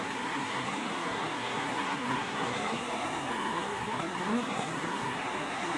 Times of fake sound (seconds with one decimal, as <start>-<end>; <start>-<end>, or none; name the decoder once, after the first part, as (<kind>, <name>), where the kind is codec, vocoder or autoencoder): 0.0-5.8 (codec, SNAC)